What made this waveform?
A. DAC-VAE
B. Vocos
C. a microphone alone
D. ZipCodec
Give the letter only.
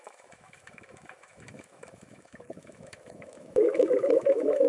A